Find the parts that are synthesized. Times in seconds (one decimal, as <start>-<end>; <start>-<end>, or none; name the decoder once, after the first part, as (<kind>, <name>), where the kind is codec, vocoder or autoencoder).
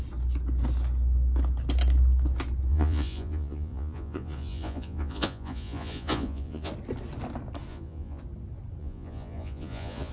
2.7-6.7 (vocoder, Vocos); 7.7-8.2; 8.8-10.1